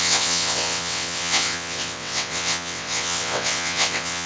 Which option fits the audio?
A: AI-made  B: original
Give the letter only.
A